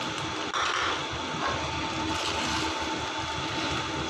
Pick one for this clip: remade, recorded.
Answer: recorded